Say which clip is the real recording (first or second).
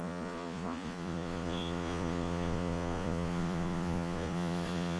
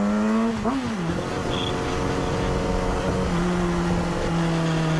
second